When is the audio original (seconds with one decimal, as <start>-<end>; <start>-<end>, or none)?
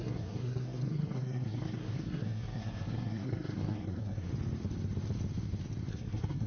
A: 4.3-5.9